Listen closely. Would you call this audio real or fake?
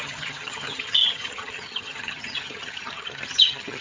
fake